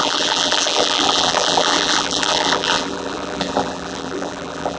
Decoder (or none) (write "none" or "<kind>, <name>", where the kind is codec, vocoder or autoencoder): vocoder, BigVGAN v2